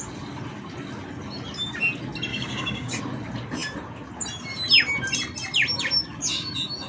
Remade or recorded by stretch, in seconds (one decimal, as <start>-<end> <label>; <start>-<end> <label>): 0.0-2.3 recorded; 2.3-3.0 remade; 3.0-6.9 recorded